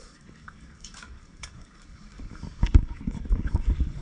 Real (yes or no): no